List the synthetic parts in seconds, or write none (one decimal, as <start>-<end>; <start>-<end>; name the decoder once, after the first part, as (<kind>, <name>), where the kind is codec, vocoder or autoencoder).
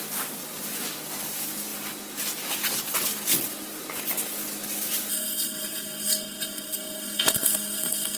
5.1-8.2 (codec, SNAC)